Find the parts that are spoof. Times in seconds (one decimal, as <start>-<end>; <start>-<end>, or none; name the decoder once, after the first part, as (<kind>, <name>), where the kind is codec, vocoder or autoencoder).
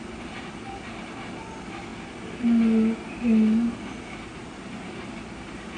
none